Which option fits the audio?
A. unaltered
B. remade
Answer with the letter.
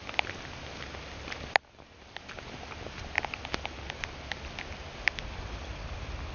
A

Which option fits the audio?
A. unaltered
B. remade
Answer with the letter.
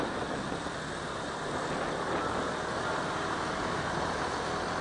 A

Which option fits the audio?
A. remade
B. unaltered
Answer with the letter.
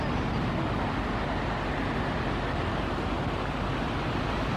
B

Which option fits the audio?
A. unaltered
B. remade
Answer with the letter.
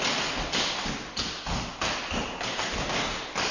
A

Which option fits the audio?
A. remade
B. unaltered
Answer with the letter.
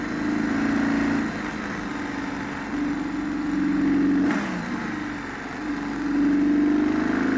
B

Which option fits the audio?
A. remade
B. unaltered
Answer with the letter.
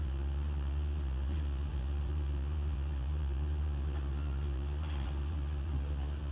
A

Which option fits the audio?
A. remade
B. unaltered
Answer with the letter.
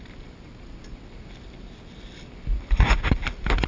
B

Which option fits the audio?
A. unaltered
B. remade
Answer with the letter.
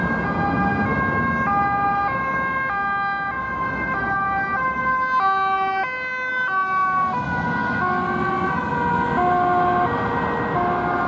A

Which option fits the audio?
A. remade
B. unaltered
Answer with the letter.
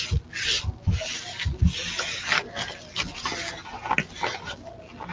B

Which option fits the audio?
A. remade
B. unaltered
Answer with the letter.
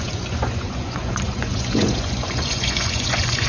A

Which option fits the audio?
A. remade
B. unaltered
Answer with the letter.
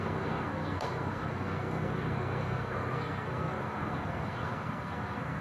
A